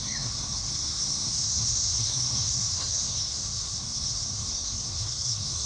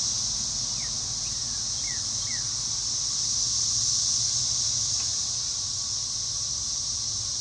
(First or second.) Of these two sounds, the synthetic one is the first